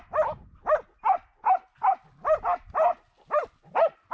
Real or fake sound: real